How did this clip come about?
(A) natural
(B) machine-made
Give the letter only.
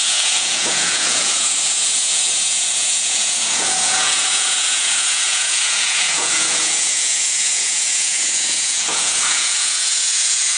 B